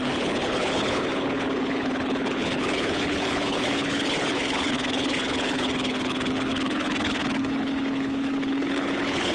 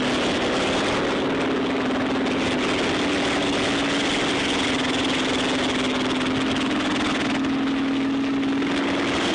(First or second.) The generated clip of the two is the first